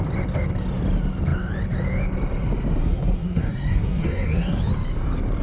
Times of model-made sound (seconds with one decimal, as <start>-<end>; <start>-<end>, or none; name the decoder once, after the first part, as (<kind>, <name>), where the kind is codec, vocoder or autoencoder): 2.8-4.6 (codec, SNAC)